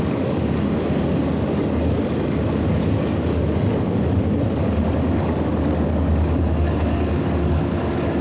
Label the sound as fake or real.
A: fake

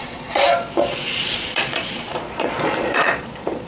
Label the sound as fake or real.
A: fake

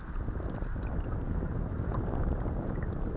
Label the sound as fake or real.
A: fake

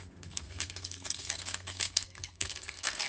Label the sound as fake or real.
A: fake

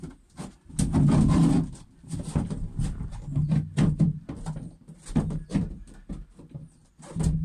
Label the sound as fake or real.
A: real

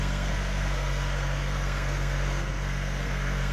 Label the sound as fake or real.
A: fake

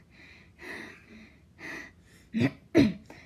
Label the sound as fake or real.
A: real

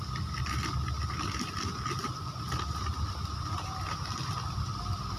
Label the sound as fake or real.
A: real